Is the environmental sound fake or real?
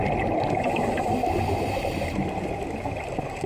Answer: real